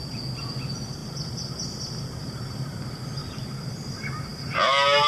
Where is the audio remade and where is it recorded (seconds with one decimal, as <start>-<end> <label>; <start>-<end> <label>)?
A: 0.0-1.0 recorded; 1.0-2.8 remade; 2.8-3.2 recorded; 3.2-3.8 remade; 3.8-5.1 recorded